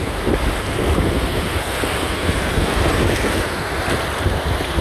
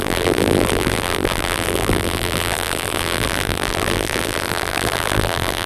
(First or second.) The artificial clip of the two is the second